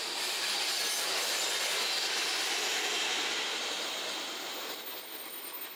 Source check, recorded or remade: recorded